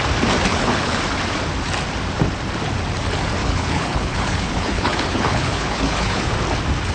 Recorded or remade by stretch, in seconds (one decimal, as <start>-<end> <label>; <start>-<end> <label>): 0.0-0.5 recorded; 0.5-1.0 remade; 1.0-3.4 recorded; 3.4-6.3 remade; 6.3-6.9 recorded